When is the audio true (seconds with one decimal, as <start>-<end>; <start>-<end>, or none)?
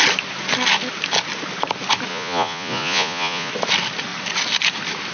0.0-2.1; 3.5-5.1